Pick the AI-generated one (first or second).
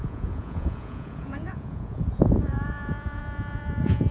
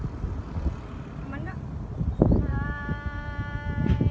first